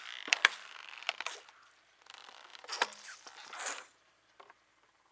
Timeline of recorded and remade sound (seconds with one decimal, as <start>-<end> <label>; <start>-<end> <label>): 0.0-5.1 remade